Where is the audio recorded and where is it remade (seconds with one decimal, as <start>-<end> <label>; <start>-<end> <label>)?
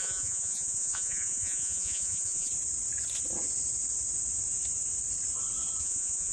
0.0-2.5 remade; 2.5-5.8 recorded; 5.8-6.3 remade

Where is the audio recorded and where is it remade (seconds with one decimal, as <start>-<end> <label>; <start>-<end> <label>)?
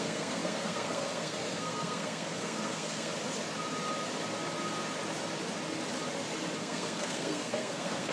0.0-3.1 remade; 3.1-6.6 recorded; 6.6-8.1 remade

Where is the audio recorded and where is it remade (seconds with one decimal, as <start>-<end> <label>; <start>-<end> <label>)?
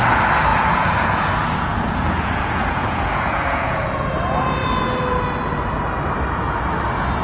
0.0-0.5 recorded; 0.5-4.1 remade; 4.1-7.2 recorded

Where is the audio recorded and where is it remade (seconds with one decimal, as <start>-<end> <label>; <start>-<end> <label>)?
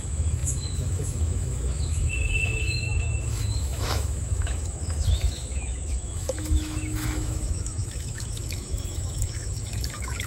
0.0-10.3 remade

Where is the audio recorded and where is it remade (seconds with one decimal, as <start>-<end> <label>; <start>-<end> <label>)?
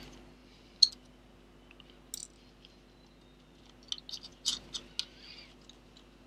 0.0-6.3 recorded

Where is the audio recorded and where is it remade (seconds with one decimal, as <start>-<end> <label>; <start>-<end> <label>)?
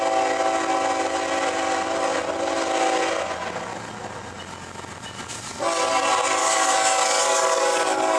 0.0-6.4 recorded; 6.4-8.2 remade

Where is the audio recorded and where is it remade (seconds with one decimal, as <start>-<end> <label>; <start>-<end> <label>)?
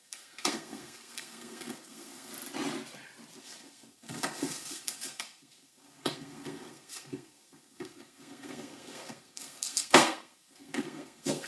0.0-2.3 remade; 2.3-3.4 recorded; 3.4-11.5 remade